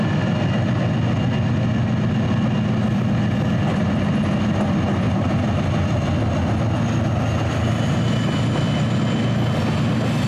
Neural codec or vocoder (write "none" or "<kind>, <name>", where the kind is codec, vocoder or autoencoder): none